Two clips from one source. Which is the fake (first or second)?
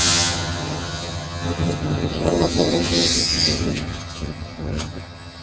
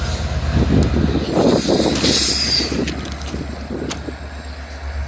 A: first